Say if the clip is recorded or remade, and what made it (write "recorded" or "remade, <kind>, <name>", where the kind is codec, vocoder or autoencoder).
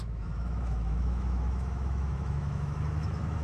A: remade, autoencoder, DAC-VAE